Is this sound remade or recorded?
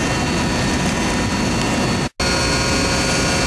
recorded